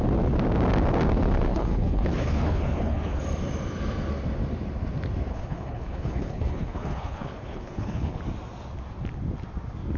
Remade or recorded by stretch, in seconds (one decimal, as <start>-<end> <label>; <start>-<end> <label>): 0.0-1.5 recorded; 1.5-3.2 remade; 3.2-5.3 recorded; 5.3-8.2 remade; 8.2-10.0 recorded

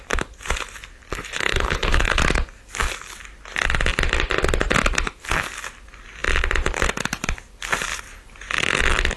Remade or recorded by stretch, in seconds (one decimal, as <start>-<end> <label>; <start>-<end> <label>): 0.0-1.1 recorded; 1.1-2.2 remade; 2.2-9.2 recorded

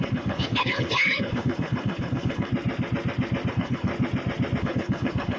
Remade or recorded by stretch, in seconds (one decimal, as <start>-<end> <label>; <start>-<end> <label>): 0.0-2.5 remade; 2.5-3.5 recorded; 3.5-3.9 remade; 3.9-4.6 recorded; 4.6-5.4 remade

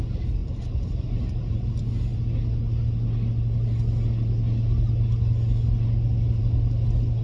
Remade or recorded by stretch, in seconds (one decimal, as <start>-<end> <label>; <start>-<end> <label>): 0.0-7.2 recorded

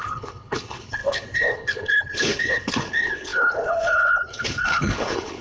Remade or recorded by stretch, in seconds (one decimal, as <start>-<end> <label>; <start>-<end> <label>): 0.0-5.4 remade

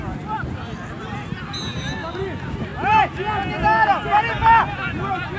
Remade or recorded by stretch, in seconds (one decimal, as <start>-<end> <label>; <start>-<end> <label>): 0.0-5.4 recorded

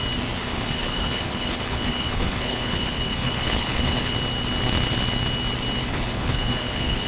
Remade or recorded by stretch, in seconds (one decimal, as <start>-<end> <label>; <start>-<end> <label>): 0.0-0.4 recorded; 0.4-4.1 remade; 4.1-5.8 recorded; 5.8-7.1 remade